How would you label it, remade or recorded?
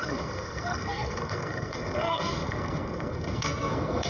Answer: remade